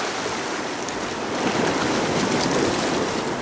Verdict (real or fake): real